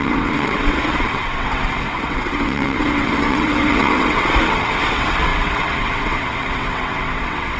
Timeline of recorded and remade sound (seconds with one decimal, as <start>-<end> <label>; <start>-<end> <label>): 0.0-7.6 remade